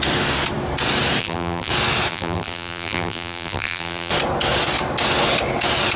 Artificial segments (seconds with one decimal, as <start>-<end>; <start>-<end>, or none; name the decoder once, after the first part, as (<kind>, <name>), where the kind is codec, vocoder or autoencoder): 1.2-1.7 (vocoder, BigVGAN v2); 2.1-4.1